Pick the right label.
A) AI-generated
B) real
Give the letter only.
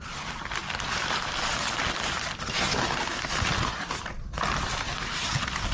B